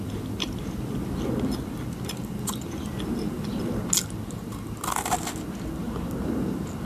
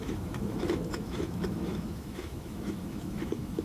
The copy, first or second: second